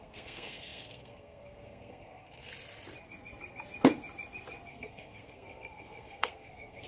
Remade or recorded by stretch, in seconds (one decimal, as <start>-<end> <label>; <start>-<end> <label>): 0.0-2.5 remade; 2.5-4.7 recorded; 4.7-6.9 remade